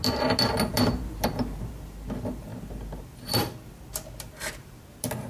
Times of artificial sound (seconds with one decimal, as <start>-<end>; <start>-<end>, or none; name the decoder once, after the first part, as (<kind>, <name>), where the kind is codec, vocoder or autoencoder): none